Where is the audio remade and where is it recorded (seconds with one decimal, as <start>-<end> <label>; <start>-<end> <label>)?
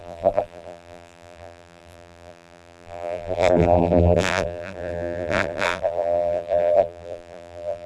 0.0-7.9 remade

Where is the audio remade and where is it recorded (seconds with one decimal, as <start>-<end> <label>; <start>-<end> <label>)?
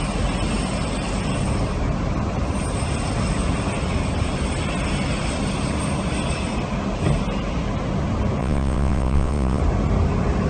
0.0-8.4 recorded; 8.4-9.6 remade; 9.6-10.5 recorded